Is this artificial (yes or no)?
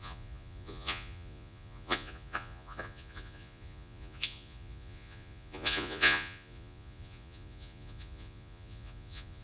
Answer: yes